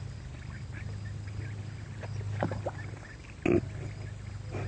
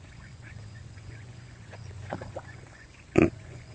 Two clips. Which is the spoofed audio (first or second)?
second